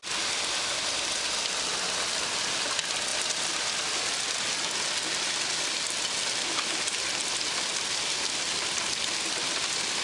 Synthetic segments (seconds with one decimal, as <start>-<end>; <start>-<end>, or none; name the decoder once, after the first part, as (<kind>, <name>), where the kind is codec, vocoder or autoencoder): none